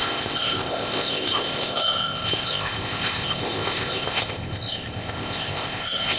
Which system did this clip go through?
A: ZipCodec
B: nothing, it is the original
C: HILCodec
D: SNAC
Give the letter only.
A